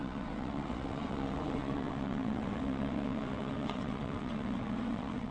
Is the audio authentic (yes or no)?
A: no